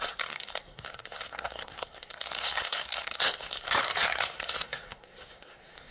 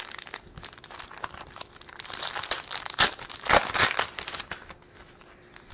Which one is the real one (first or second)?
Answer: second